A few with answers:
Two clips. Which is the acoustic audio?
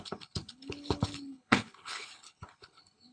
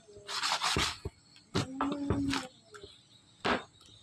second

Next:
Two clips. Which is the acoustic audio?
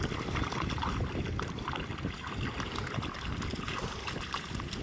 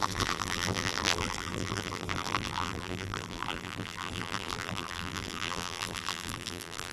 first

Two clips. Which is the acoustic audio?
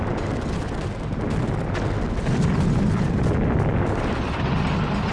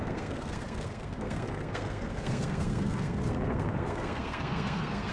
first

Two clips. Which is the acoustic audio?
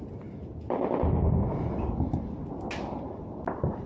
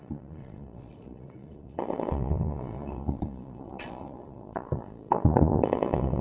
first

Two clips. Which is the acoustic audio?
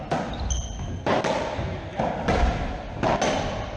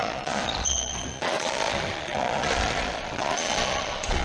first